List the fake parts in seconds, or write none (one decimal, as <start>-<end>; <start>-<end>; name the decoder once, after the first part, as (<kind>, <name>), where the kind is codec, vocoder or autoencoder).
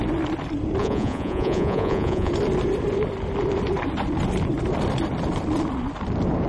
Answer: 0.8-2.3 (vocoder, Vocos)